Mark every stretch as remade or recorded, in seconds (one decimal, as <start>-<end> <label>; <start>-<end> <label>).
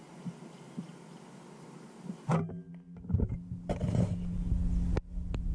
0.0-5.5 recorded